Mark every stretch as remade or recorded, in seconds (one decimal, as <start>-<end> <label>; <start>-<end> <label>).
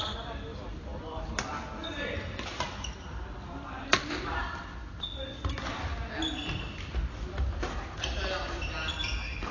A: 0.0-9.5 recorded